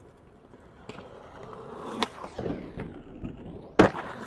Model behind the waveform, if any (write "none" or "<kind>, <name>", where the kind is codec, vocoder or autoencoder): none